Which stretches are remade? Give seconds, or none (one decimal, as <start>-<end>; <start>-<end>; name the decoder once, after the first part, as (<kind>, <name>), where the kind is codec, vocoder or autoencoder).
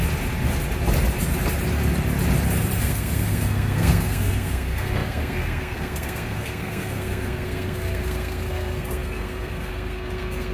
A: 2.8-10.5 (codec, SNAC)